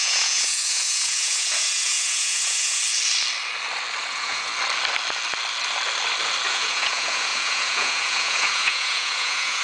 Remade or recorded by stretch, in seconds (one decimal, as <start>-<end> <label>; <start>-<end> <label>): 0.0-2.8 remade; 2.8-4.0 recorded; 4.0-4.5 remade; 4.5-6.5 recorded; 6.5-9.6 remade